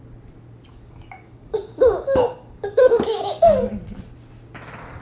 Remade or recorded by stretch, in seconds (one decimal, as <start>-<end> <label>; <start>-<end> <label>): 0.0-0.7 recorded; 0.7-3.7 remade; 3.7-5.0 recorded